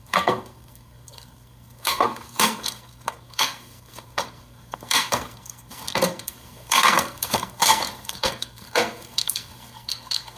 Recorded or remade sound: remade